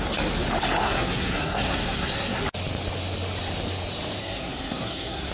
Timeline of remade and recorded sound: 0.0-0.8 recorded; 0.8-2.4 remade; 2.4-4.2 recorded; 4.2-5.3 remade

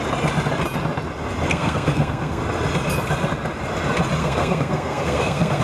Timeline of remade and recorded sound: 0.0-1.5 recorded; 1.5-2.4 remade; 2.4-4.2 recorded; 4.2-5.6 remade

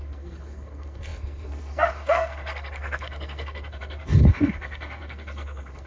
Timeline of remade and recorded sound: 0.0-5.9 remade

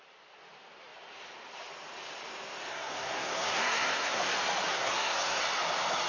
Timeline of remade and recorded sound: 0.0-2.7 recorded; 2.7-4.2 remade; 4.2-4.7 recorded; 4.7-5.4 remade; 5.4-6.1 recorded

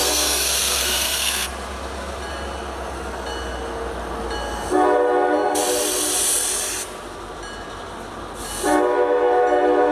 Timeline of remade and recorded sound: 0.0-1.5 remade; 1.5-9.9 recorded

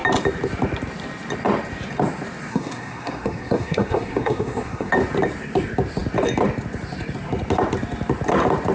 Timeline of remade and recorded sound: 0.0-2.5 recorded; 2.5-4.9 remade; 4.9-8.7 recorded

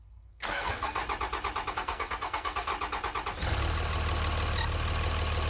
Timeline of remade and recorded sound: 0.0-1.0 remade; 1.0-1.7 recorded; 1.7-2.7 remade; 2.7-5.5 recorded